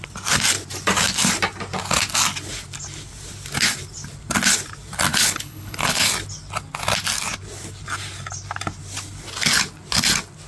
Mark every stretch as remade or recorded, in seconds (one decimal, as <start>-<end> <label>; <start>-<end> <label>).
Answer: 0.0-5.1 recorded; 5.1-6.1 remade; 6.1-10.5 recorded